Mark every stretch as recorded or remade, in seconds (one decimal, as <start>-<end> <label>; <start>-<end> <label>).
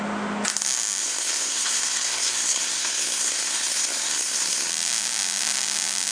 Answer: 0.0-1.0 recorded; 1.0-4.7 remade; 4.7-6.1 recorded